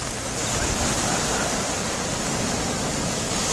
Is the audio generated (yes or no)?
no